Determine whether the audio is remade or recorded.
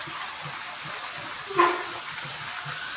recorded